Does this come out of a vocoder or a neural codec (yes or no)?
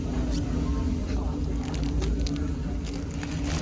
no